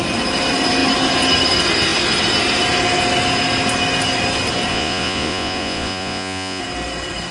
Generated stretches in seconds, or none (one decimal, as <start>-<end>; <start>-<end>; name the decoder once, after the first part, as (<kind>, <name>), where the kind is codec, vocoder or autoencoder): 4.7-6.6 (vocoder, Vocos)